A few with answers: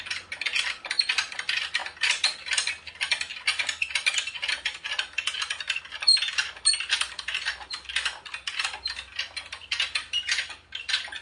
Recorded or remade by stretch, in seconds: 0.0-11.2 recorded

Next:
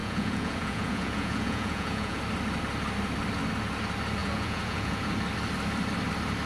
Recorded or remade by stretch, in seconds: 0.0-2.2 remade; 2.2-4.2 recorded; 4.2-5.1 remade; 5.1-6.5 recorded

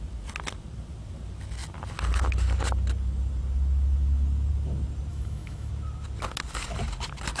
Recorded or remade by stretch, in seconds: 0.0-5.1 recorded; 5.1-5.7 remade; 5.7-7.4 recorded

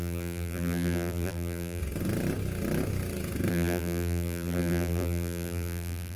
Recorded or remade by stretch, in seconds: 0.0-1.8 remade; 1.8-3.5 recorded; 3.5-6.2 remade